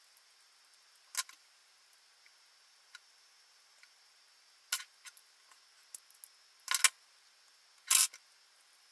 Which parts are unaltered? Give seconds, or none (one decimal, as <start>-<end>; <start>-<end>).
0.0-8.9